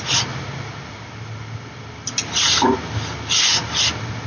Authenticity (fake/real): real